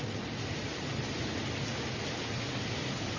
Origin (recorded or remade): recorded